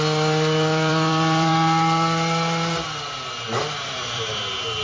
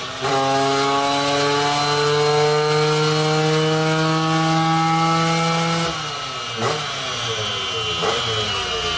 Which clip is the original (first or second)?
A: second